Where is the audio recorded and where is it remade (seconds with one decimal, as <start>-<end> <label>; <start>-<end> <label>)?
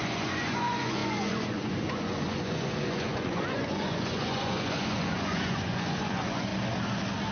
0.0-6.5 remade; 6.5-7.3 recorded